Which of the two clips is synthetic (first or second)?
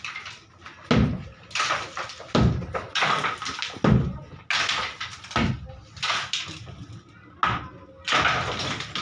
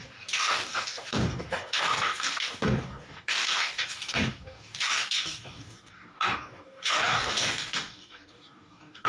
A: second